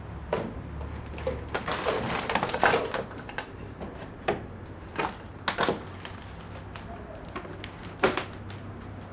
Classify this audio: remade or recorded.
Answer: recorded